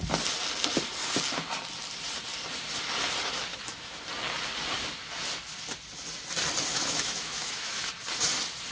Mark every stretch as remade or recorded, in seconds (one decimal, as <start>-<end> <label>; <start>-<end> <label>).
0.0-3.5 recorded; 3.5-4.0 remade; 4.0-6.7 recorded; 6.7-7.8 remade; 7.8-8.7 recorded